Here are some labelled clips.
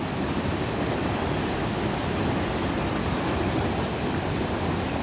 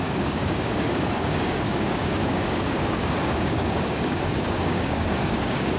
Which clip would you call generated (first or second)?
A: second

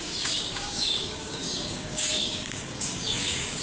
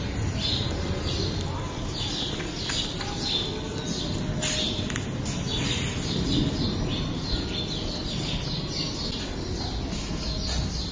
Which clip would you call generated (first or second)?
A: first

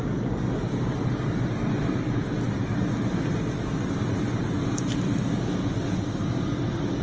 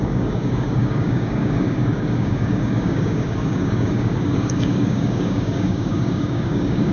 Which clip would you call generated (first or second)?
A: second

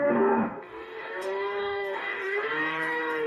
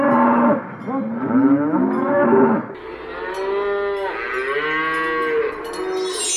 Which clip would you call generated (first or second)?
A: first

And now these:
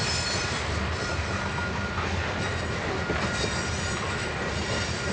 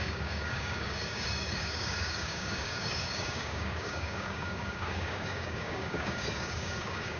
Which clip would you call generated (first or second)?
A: second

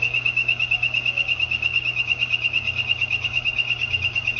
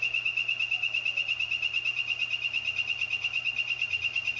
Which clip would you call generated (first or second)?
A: first